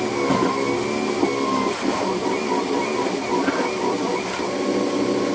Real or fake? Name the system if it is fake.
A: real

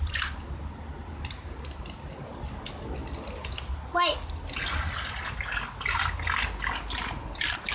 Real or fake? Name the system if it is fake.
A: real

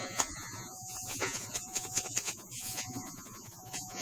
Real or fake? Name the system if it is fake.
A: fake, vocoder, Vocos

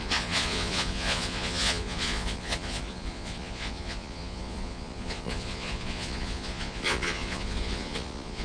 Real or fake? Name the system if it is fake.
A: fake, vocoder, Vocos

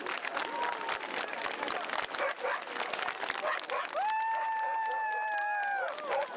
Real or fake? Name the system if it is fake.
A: real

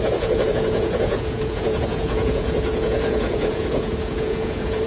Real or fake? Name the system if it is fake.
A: fake, vocoder, Vocos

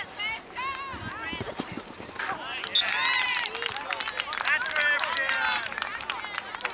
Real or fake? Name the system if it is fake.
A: real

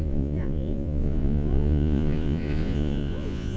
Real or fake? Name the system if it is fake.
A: fake, vocoder, Vocos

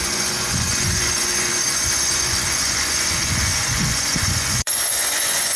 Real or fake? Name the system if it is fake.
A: fake, vocoder, Vocos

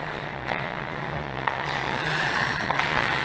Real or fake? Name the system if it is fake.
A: fake, vocoder, Vocos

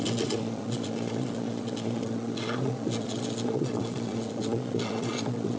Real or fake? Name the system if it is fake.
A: fake, vocoder, Vocos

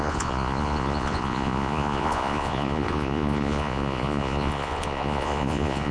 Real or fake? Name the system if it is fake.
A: fake, vocoder, Vocos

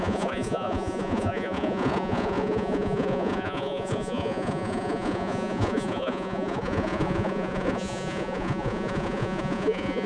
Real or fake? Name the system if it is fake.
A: fake, vocoder, Vocos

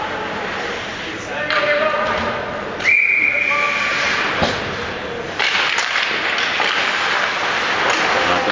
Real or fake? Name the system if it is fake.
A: real